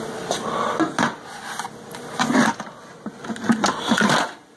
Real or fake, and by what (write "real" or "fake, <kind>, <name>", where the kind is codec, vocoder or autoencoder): real